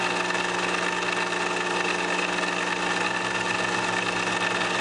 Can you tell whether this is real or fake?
real